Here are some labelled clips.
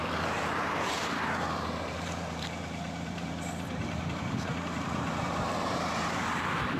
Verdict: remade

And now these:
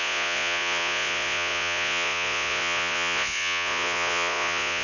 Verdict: remade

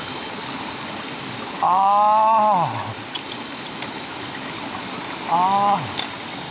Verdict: recorded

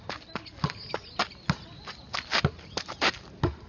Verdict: recorded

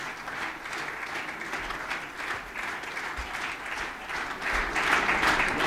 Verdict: recorded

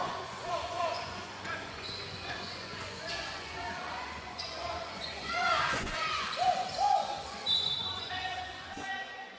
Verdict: remade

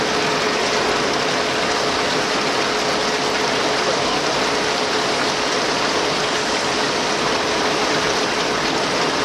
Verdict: recorded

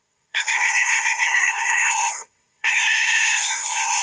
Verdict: remade